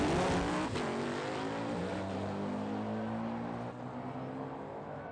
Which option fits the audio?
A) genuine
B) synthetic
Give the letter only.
A